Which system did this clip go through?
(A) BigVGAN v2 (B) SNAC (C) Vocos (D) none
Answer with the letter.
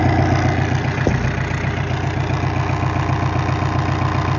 D